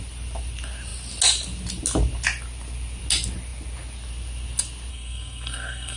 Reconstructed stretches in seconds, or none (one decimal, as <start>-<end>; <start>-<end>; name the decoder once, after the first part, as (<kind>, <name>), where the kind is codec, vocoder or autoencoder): 4.9-6.0 (codec, SNAC)